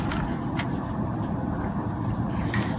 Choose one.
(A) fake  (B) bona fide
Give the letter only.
B